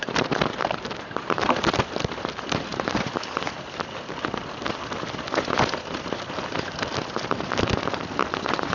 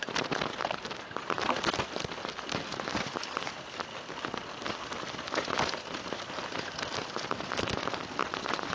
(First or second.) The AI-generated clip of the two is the first